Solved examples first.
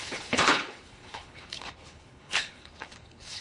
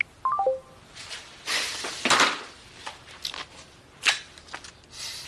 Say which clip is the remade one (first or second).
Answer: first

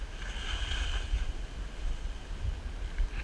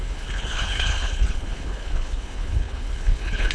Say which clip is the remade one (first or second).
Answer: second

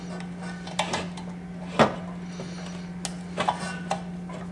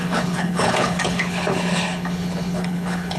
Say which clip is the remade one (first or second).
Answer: second